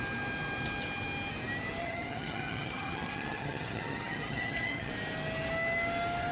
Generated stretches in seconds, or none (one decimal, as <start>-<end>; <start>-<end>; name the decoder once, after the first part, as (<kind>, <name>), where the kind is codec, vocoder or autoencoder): 1.8-4.9 (vocoder, HiFi-GAN)